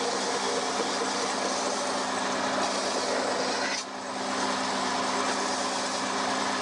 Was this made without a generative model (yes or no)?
yes